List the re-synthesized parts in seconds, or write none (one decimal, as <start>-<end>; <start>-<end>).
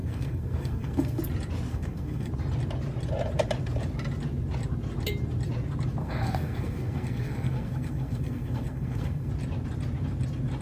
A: 0.0-1.2; 1.7-2.3; 6.0-9.3